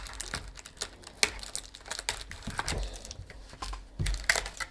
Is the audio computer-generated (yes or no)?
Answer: no